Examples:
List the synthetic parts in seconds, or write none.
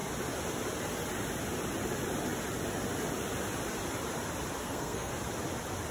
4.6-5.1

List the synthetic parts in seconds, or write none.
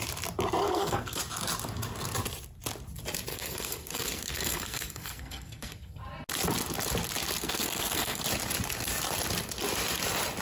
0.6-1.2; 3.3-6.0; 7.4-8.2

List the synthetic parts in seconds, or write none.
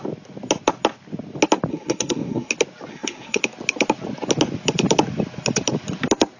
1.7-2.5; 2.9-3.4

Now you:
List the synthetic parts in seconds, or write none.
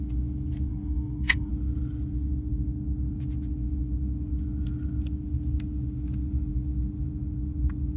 0.7-1.5